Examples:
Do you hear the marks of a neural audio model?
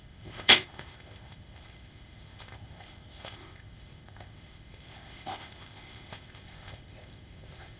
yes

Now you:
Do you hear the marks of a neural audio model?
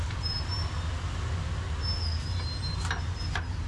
no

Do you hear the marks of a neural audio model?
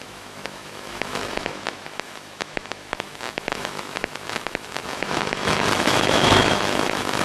yes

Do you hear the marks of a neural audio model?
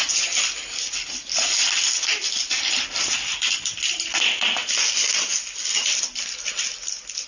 no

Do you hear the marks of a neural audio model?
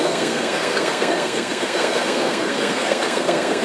yes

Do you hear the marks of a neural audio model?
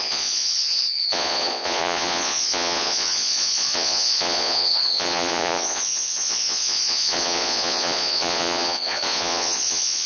yes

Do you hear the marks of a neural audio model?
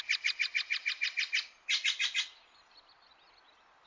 no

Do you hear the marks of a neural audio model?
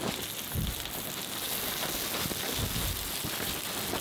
no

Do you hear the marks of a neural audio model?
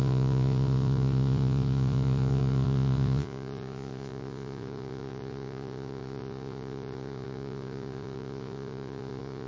yes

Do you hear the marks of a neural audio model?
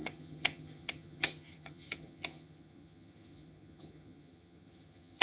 yes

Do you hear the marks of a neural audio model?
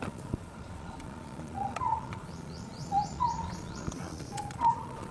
yes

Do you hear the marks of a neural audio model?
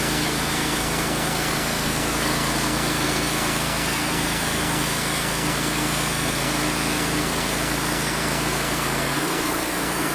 yes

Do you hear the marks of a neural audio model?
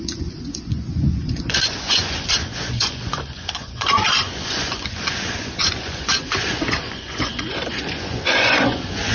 yes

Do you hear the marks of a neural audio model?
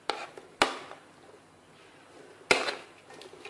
no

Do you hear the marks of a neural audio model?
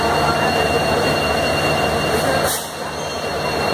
no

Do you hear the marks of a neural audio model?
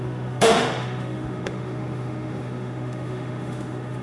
yes